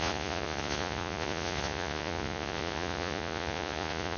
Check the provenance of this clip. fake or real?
fake